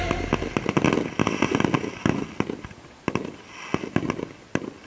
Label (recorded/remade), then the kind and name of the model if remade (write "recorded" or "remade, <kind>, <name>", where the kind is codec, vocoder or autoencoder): recorded